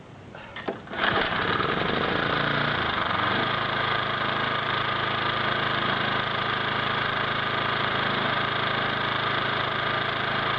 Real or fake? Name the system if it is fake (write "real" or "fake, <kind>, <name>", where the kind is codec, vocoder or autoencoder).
fake, vocoder, BigVGAN v2